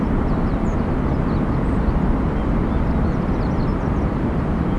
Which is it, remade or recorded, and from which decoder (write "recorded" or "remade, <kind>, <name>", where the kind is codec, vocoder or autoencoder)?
recorded